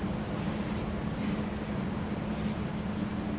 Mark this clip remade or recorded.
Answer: recorded